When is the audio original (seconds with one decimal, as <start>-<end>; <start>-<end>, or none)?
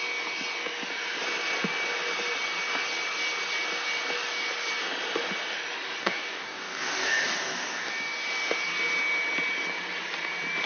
0.0-6.0; 7.9-10.7